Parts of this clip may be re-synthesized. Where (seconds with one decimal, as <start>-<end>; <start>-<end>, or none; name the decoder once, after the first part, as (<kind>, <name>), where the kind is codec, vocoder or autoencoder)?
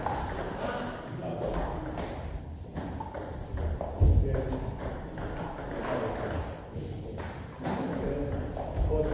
none